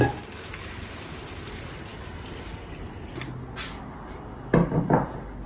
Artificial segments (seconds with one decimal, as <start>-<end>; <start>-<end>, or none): none